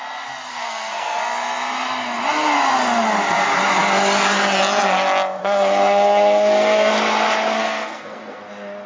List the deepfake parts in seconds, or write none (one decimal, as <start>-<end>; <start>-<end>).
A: 0.5-1.2; 5.4-6.9; 7.6-8.4